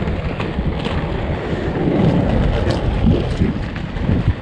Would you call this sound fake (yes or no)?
no